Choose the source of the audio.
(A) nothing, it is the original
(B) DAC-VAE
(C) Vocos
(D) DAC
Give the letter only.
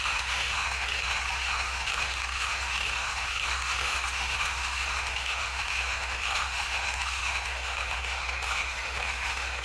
B